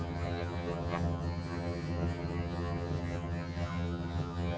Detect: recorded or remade remade